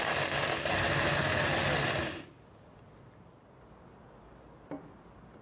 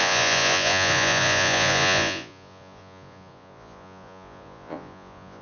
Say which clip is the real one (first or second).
first